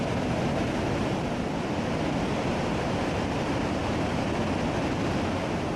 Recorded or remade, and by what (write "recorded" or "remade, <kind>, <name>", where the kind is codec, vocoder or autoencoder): recorded